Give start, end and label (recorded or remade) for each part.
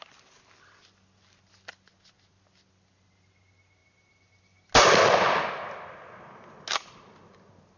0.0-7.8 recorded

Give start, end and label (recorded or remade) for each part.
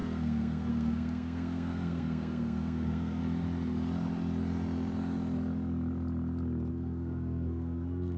0.0-3.2 remade; 3.2-6.7 recorded; 6.7-8.2 remade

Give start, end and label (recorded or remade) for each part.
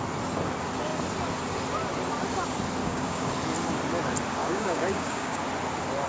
0.0-2.8 recorded; 2.8-3.3 remade; 3.3-4.4 recorded; 4.4-5.4 remade; 5.4-6.1 recorded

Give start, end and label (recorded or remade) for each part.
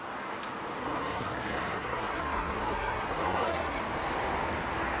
0.0-0.8 recorded; 0.8-3.8 remade; 3.8-5.0 recorded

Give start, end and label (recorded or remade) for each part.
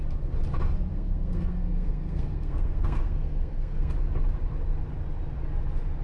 0.0-0.9 recorded; 0.9-3.9 remade; 3.9-6.0 recorded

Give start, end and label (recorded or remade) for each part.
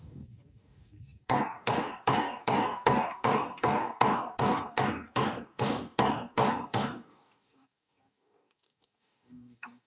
0.0-9.9 remade